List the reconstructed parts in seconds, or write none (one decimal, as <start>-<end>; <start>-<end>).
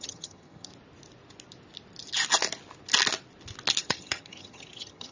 0.0-0.7; 3.8-5.1